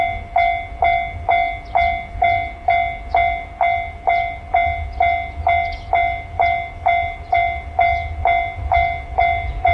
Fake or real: real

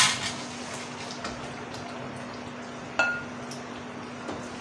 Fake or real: real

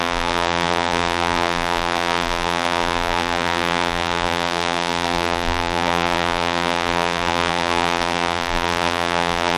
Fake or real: fake